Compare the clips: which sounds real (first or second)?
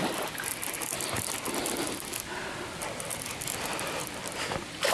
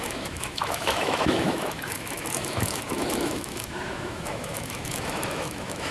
first